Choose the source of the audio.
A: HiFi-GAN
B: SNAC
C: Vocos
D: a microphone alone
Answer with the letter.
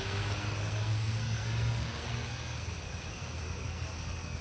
B